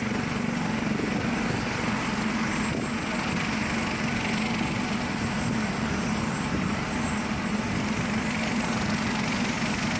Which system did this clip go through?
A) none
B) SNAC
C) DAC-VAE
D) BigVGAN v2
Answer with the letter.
A